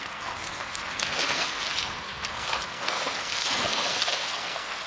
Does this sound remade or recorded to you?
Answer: remade